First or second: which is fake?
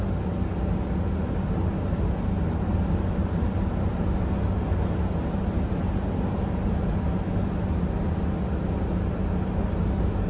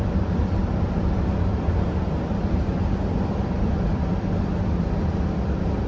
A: second